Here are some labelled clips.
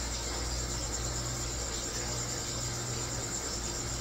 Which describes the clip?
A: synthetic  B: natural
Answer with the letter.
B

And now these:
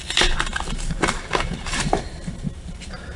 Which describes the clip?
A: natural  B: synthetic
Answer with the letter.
B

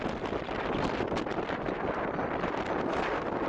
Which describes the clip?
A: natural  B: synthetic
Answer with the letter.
A